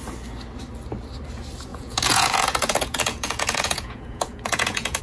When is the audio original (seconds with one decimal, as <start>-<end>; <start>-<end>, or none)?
0.0-1.7